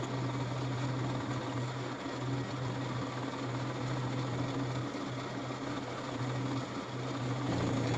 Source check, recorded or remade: recorded